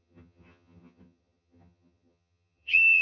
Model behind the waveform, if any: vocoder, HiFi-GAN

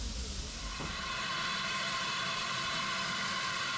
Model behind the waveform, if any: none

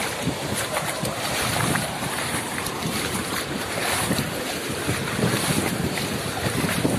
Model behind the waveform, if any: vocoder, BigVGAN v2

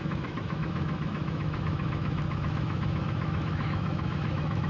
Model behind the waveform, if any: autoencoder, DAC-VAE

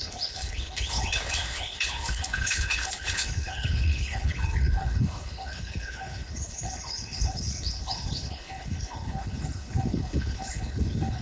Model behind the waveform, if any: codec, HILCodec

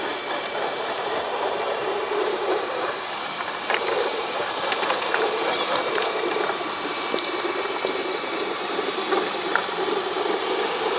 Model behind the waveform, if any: vocoder, BigVGAN v2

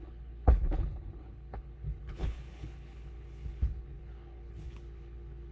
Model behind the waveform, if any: codec, HILCodec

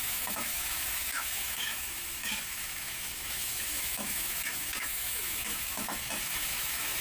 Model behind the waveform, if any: autoencoder, DAC-VAE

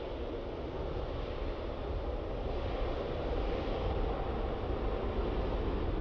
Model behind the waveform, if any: none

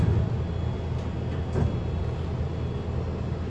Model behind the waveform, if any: none